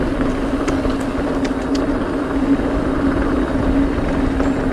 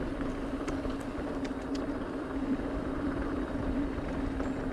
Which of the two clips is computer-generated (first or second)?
second